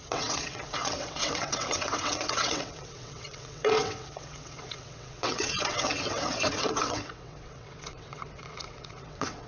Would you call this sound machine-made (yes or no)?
yes